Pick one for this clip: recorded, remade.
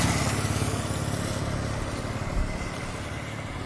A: recorded